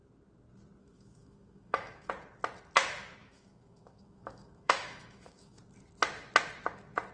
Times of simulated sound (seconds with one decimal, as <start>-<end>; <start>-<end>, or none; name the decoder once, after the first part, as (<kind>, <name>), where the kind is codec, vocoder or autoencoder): 0.8-2.1 (autoencoder, DAC-VAE); 3.2-5.6